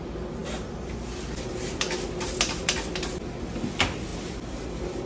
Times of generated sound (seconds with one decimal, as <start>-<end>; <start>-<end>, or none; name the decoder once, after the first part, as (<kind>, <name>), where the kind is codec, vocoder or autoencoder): none